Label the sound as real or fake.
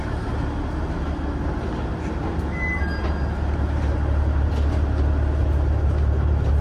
real